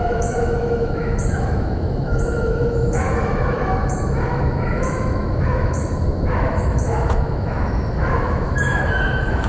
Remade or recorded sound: remade